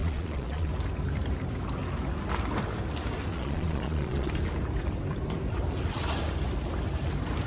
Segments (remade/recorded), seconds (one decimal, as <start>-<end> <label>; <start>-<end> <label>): 0.0-0.7 remade; 0.7-3.3 recorded; 3.3-4.3 remade; 4.3-7.5 recorded